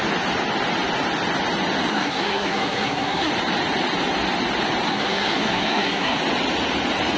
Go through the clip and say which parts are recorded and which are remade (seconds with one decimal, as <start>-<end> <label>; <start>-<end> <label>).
0.0-1.9 recorded; 1.9-3.3 remade; 3.3-4.9 recorded; 4.9-6.2 remade; 6.2-7.2 recorded